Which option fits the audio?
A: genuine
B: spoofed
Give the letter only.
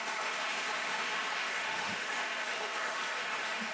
B